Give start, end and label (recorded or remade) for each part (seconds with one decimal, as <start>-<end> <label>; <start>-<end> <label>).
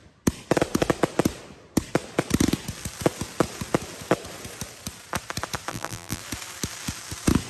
0.0-5.7 recorded; 5.7-6.2 remade; 6.2-7.5 recorded